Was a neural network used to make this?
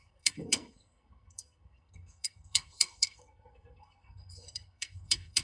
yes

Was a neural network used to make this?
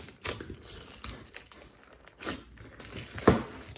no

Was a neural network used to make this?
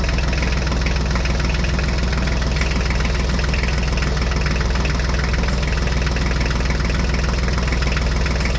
no